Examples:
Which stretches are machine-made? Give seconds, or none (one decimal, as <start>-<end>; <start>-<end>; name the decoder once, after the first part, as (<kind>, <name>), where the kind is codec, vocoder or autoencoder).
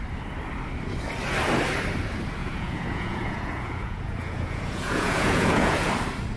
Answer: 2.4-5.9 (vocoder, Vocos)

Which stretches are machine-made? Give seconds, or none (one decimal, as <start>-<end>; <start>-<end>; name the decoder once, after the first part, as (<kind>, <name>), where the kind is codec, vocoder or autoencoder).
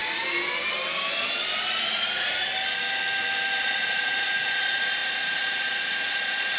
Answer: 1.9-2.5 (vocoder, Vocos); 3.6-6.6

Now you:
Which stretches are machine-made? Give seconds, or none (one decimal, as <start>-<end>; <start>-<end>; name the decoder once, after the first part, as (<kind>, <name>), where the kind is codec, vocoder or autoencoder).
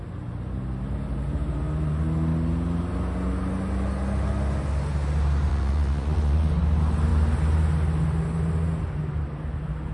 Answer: 5.5-6.5 (vocoder, Vocos)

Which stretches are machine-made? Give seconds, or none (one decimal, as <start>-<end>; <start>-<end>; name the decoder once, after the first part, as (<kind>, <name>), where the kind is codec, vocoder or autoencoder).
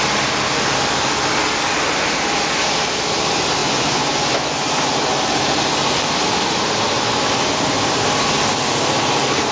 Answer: 3.6-4.9 (vocoder, Vocos)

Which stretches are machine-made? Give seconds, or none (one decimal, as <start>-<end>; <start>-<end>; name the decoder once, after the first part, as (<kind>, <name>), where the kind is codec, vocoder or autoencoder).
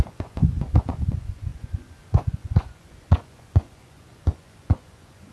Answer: 0.0-5.3 (vocoder, Vocos)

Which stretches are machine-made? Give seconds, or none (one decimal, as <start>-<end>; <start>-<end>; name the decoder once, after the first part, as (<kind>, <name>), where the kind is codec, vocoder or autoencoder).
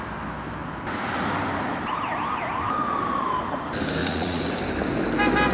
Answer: 4.0-4.5 (vocoder, Vocos)